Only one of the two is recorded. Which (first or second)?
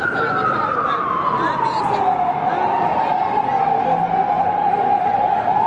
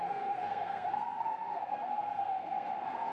first